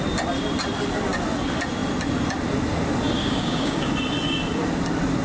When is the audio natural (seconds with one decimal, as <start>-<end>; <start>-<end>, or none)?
0.0-3.2; 3.9-5.2